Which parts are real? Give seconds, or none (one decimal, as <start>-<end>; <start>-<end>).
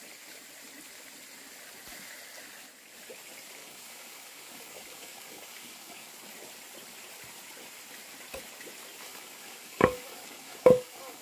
0.0-3.6; 6.1-9.1